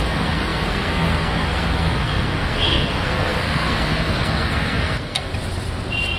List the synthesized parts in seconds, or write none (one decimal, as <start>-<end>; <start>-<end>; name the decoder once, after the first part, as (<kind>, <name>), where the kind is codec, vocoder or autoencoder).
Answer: 0.0-5.3 (codec, SNAC)